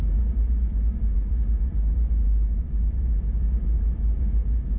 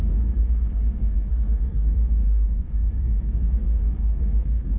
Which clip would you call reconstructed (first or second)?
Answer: second